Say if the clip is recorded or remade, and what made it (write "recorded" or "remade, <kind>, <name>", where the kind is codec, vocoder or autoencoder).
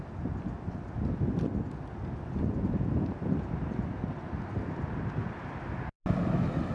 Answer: recorded